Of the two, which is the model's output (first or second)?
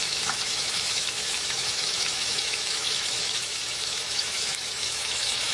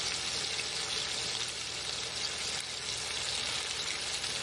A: first